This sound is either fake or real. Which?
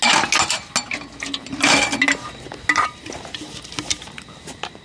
real